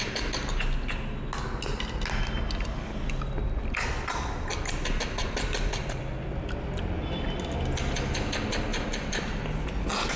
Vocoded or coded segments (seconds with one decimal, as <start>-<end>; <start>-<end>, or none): 5.2-6.3; 8.7-9.7